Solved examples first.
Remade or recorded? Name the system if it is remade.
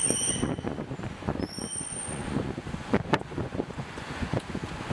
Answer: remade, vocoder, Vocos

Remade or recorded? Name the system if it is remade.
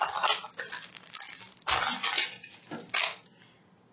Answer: recorded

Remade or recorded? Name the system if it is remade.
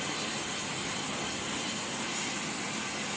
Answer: recorded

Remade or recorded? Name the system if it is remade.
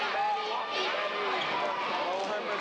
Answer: recorded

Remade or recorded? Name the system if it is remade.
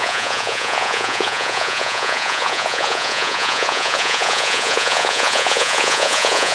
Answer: remade, vocoder, Vocos